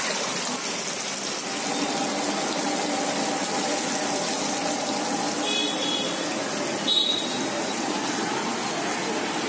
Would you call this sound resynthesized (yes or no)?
no